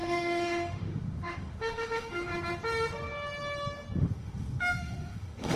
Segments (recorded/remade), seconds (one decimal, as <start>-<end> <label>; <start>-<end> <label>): 0.0-2.3 remade; 2.3-4.0 recorded; 4.0-5.6 remade